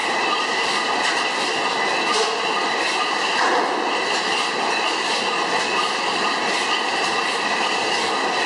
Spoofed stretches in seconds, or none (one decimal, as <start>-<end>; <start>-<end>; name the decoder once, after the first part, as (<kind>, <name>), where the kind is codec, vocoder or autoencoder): none